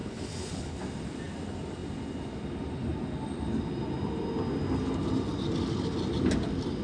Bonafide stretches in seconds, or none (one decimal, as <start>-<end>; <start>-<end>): 0.8-6.8

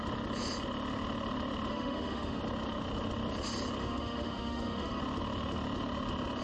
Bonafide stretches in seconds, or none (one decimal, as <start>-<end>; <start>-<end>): 0.0-1.7; 2.4-3.8; 5.0-6.4

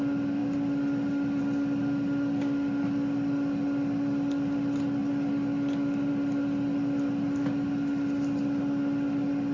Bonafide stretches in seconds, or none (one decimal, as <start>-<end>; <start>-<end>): 0.0-9.5